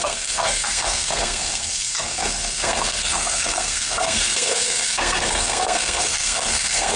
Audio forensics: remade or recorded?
remade